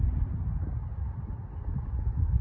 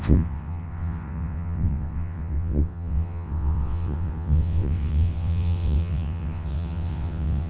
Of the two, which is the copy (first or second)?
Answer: second